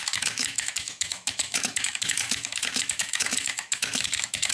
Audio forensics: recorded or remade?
remade